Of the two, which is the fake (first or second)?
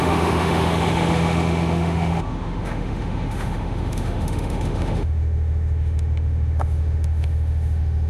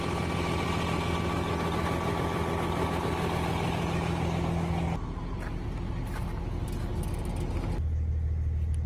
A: first